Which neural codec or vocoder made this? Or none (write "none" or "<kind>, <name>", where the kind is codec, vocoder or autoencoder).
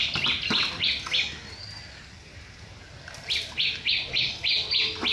none